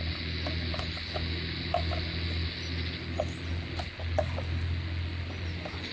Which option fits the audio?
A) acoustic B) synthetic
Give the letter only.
A